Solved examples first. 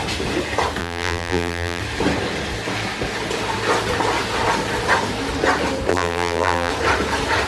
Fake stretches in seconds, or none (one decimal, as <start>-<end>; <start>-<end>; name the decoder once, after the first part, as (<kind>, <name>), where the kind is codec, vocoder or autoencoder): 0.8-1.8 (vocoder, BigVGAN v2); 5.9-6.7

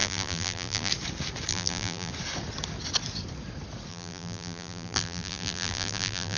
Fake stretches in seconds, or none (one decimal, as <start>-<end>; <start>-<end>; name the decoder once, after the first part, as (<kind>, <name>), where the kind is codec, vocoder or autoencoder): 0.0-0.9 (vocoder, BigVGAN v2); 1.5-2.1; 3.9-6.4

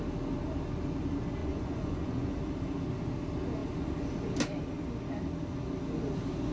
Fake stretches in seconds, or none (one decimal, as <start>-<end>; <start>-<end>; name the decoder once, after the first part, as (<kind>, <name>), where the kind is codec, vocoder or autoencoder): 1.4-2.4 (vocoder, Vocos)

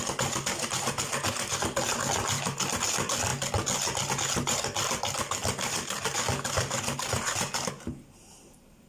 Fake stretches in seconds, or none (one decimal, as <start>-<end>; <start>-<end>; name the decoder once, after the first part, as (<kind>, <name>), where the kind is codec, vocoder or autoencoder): none

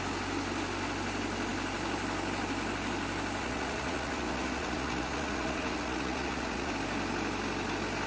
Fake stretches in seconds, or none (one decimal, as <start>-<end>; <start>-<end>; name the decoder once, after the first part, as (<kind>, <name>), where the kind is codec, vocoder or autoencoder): 3.4-6.7 (vocoder, Vocos)

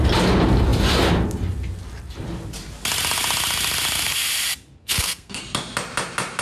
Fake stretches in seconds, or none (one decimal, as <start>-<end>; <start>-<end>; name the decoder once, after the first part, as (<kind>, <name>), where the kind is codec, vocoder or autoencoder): 4.8-5.4 (codec, SNAC)